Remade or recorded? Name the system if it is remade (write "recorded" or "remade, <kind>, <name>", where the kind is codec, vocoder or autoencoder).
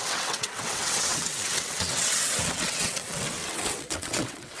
remade, vocoder, WaveNeXt